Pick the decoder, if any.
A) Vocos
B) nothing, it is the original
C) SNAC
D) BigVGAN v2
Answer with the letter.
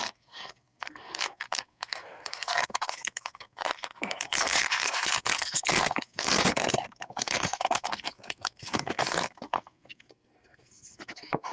C